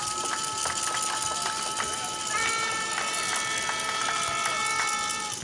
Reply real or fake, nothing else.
real